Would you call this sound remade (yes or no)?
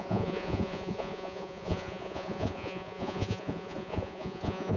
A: yes